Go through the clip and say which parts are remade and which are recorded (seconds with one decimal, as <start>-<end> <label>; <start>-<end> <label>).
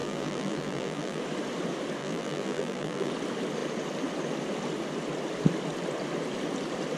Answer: 0.0-1.2 remade; 1.2-2.0 recorded; 2.0-3.1 remade; 3.1-7.0 recorded